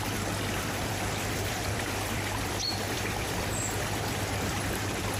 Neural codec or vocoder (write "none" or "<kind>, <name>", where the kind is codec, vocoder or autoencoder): vocoder, BigVGAN v2